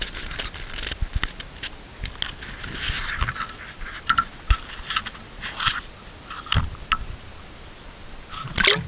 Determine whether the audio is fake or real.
real